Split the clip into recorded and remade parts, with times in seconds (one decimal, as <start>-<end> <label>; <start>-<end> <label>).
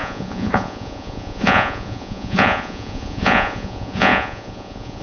0.0-5.0 remade